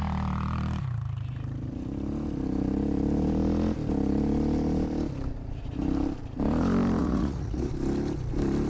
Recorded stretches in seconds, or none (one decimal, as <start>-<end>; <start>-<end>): 0.0-7.0; 7.7-8.7